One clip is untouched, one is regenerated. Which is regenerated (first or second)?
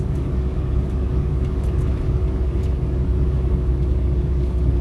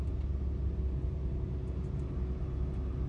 first